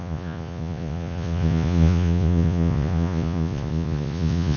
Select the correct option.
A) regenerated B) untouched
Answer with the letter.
A